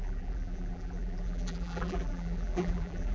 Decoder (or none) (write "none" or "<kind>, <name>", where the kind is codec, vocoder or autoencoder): vocoder, BigVGAN v2